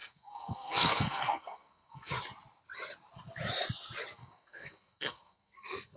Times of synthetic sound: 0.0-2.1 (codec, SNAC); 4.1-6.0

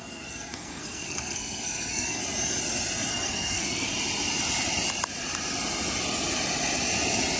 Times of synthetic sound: 0.0-2.2 (codec, SNAC); 3.1-3.9